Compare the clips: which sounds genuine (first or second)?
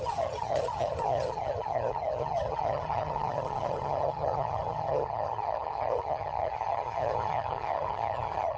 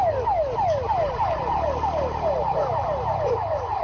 second